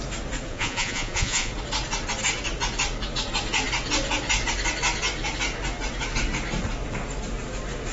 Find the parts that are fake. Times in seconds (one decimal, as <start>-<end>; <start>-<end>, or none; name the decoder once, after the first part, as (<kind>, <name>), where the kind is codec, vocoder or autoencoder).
0.5-1.5 (vocoder, Vocos)